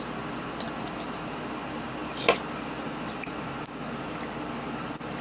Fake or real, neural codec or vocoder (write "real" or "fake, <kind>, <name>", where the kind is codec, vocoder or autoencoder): real